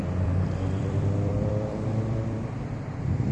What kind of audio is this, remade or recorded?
remade